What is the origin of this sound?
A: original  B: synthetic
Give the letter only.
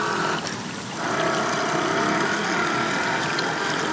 A